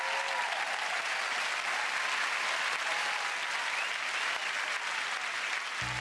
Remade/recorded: recorded